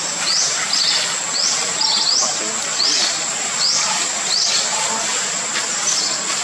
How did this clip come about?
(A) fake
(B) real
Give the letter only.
B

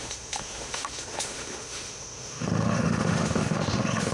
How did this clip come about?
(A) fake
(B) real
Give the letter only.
A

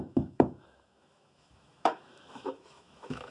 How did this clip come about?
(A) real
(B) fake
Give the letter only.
B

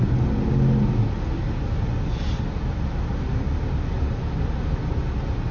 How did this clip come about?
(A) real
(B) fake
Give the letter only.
A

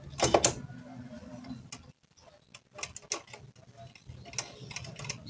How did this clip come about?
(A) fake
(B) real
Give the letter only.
B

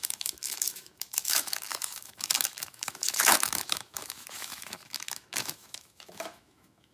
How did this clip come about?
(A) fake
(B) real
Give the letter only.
A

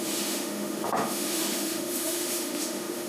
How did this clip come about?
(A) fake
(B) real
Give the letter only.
A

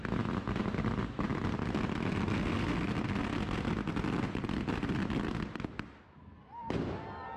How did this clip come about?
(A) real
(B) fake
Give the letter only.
A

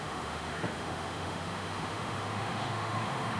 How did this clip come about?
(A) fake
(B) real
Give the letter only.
A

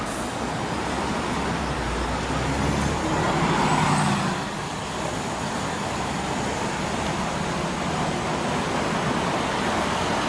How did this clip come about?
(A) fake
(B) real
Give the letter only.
B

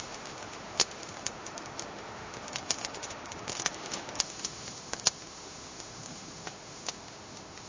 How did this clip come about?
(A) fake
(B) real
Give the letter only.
A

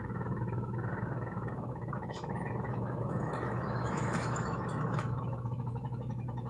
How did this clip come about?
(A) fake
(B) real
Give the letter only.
A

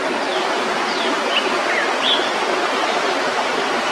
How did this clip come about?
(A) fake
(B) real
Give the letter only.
B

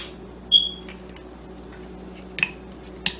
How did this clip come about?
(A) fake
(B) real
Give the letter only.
B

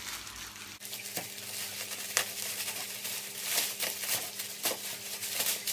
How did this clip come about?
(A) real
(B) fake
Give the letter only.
A